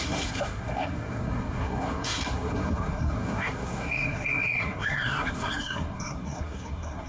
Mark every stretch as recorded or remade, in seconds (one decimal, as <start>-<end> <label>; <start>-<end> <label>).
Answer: 0.0-7.1 remade